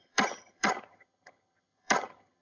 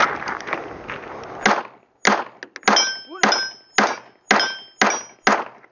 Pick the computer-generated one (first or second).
first